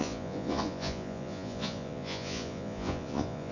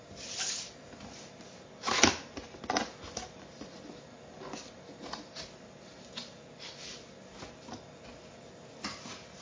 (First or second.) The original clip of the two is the second